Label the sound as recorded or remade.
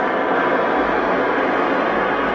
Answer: recorded